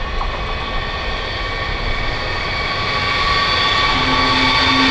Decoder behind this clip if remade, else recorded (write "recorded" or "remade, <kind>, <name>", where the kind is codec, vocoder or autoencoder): recorded